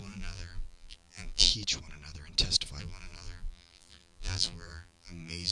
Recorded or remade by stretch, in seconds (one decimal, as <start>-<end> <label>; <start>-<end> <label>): 0.0-1.5 remade; 1.5-2.8 recorded; 2.8-5.5 remade